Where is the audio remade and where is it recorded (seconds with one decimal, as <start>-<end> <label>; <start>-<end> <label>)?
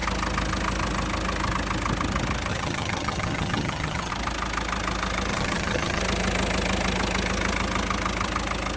0.0-2.5 recorded; 2.5-4.1 remade; 4.1-5.3 recorded; 5.3-6.0 remade; 6.0-8.8 recorded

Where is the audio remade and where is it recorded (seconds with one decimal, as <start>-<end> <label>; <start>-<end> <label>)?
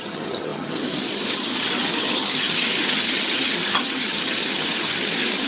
0.0-5.5 remade